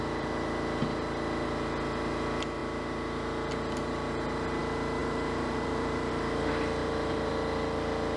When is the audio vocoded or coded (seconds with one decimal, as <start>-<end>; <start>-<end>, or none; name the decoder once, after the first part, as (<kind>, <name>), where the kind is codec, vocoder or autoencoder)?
5.0-6.1 (vocoder, BigVGAN v2); 6.8-7.3